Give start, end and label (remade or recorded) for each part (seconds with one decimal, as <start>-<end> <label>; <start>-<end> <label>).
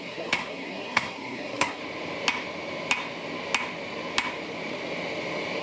0.0-1.8 remade; 1.8-5.6 recorded